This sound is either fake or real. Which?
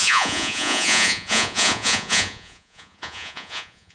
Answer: fake